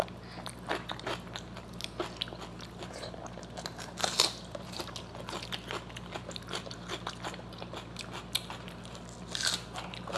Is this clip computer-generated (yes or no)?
no